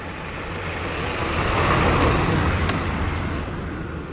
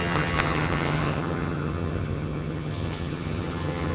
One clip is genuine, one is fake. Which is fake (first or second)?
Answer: second